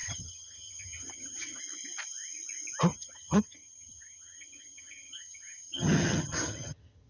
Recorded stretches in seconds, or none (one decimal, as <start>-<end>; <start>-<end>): 1.6-2.9